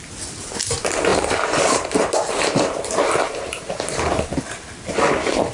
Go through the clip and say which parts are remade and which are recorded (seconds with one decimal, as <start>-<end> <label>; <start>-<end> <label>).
0.0-1.1 recorded; 1.1-4.4 remade; 4.4-5.5 recorded